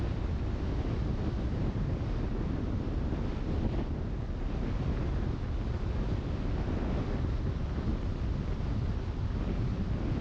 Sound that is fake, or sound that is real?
real